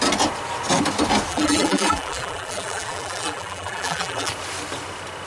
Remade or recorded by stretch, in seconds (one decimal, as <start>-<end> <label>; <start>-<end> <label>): 0.0-1.3 recorded; 1.3-4.3 remade; 4.3-5.3 recorded